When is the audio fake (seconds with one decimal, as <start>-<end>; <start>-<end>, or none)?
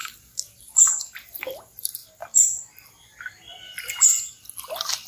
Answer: 0.0-2.0